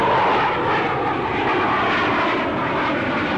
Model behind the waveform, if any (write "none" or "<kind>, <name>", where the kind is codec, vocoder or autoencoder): none